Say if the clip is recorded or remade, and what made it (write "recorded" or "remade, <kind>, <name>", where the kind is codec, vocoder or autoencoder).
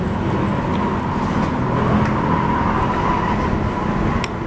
recorded